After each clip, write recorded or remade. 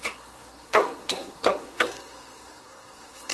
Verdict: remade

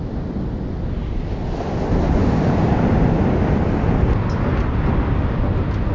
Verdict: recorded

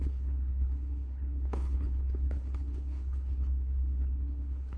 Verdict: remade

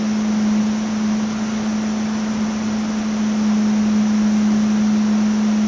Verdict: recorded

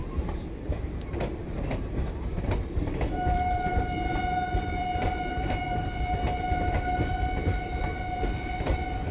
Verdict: remade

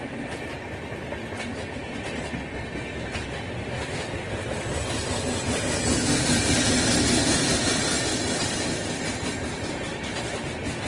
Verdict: recorded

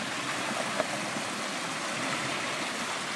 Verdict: recorded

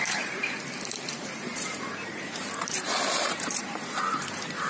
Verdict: remade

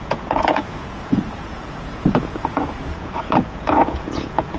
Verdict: remade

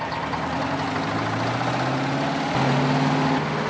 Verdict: recorded